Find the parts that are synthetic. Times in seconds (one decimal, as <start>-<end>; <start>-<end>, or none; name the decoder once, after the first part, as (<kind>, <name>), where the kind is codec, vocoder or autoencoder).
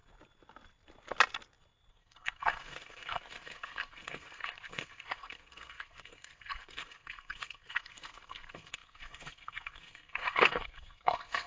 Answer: 1.9-11.5 (codec, SNAC)